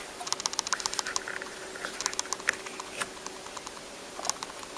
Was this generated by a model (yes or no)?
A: no